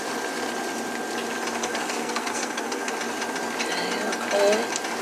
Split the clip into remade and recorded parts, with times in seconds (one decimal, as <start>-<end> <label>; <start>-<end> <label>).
0.0-1.6 recorded; 1.6-2.9 remade; 2.9-5.0 recorded